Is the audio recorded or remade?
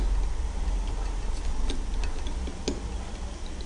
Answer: recorded